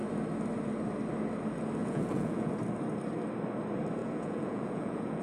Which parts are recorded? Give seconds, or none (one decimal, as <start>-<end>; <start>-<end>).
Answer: 0.0-1.8; 2.5-4.0